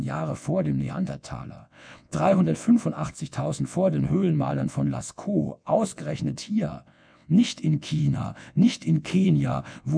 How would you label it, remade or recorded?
remade